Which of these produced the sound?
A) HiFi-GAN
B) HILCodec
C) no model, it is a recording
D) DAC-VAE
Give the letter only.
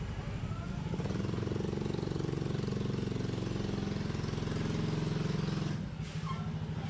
C